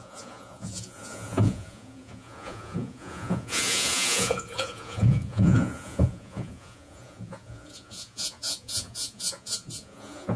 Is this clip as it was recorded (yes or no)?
no